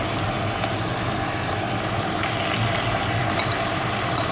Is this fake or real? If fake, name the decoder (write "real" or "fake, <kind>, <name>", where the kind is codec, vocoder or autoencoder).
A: real